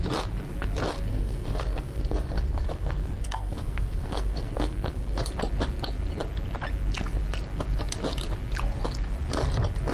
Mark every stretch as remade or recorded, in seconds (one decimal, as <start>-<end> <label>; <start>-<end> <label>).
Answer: 0.0-1.1 recorded; 1.1-5.3 remade; 5.3-9.9 recorded